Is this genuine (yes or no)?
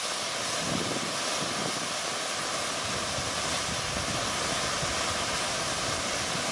yes